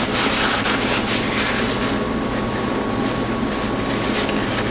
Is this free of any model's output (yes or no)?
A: yes